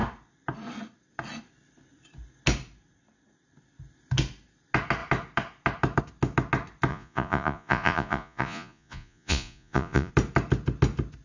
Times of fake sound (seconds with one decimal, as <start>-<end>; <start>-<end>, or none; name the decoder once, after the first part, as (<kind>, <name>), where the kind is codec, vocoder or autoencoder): 6.9-10.1 (vocoder, Vocos)